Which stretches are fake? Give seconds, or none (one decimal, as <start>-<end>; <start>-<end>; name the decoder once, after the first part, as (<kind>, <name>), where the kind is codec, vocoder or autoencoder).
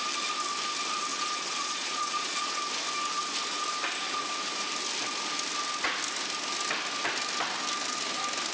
1.1-2.6 (vocoder, Vocos)